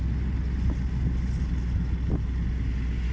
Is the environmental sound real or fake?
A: real